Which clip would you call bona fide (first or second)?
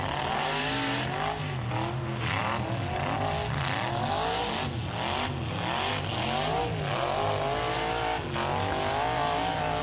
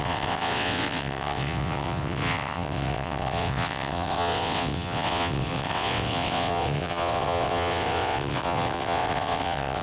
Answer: first